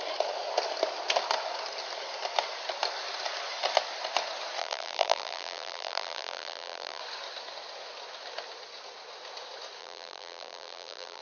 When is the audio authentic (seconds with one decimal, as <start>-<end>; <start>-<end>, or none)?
0.0-4.6; 7.0-9.8